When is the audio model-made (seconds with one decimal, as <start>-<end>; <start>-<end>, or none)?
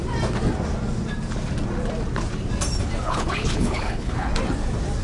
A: 3.0-4.3